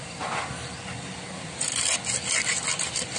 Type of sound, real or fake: real